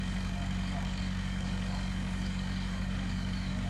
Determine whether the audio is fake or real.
fake